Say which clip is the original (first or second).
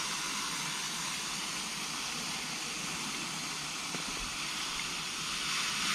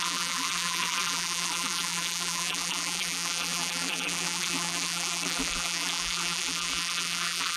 first